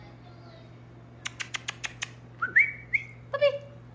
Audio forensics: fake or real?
fake